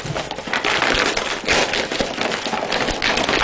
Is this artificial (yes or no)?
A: no